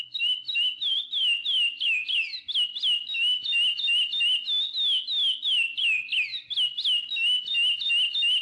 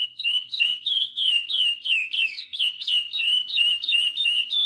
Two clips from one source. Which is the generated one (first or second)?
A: second